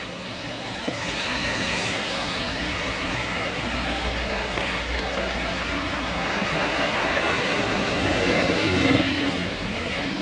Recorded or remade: remade